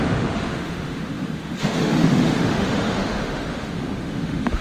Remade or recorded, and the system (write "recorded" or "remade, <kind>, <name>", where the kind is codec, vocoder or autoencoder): remade, autoencoder, DAC-VAE